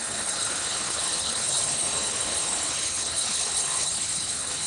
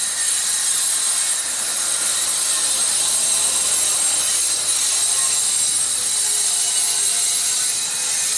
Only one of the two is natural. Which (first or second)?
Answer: second